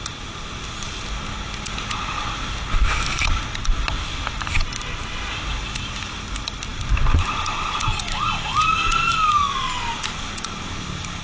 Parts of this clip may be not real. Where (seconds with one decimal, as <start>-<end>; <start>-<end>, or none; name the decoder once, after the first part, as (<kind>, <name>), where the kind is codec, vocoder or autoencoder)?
none